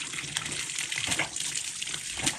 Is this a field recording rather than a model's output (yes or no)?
no